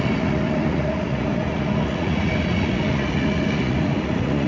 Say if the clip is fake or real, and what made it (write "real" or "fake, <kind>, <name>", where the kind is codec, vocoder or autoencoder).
fake, vocoder, Vocos